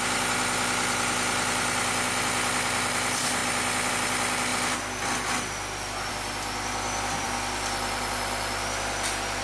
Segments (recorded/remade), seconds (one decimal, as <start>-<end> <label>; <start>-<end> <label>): 0.0-3.4 remade; 3.4-3.9 recorded; 3.9-4.5 remade; 4.5-6.1 recorded; 6.1-9.4 remade